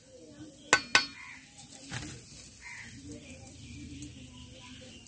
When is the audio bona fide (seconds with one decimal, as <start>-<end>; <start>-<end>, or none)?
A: 0.0-5.1